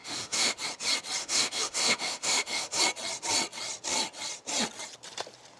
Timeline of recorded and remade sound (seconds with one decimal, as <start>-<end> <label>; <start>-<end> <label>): 0.0-0.6 remade; 0.6-1.2 recorded; 1.2-2.8 remade; 2.8-5.6 recorded